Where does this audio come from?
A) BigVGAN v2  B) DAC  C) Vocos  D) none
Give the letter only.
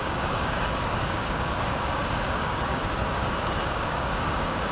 B